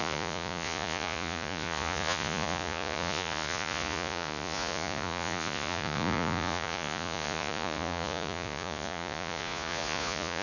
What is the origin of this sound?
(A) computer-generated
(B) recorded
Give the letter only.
A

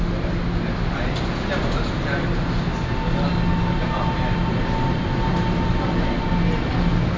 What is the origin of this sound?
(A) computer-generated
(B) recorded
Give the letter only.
B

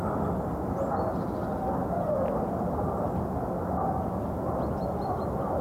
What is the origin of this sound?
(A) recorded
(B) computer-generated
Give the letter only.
A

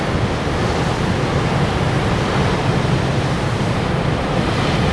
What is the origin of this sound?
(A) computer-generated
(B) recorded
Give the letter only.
A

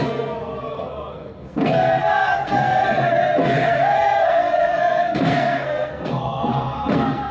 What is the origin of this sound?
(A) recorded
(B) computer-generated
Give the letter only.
B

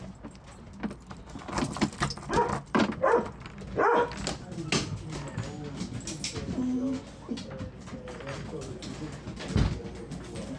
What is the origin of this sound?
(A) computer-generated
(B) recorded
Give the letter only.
B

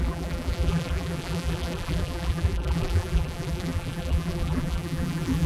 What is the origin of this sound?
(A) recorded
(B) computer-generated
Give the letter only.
B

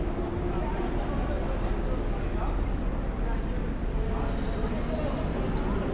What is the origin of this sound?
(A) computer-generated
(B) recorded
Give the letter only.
B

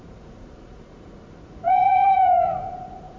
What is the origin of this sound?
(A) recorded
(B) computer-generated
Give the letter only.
B